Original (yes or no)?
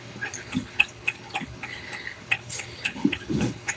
no